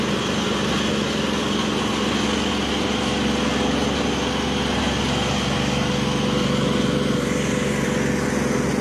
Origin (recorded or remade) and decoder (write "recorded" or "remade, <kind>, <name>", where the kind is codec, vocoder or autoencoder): recorded